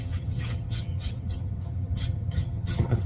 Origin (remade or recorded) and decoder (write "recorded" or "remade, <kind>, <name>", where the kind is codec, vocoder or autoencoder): remade, vocoder, HiFi-GAN